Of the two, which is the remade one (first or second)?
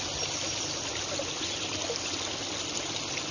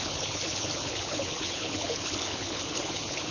second